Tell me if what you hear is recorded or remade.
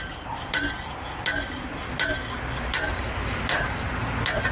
recorded